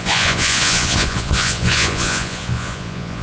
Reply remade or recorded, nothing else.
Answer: remade